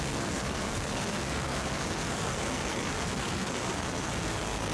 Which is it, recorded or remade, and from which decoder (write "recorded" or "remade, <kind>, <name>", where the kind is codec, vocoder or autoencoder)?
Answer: remade, codec, SNAC